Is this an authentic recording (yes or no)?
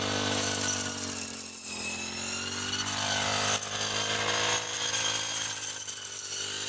yes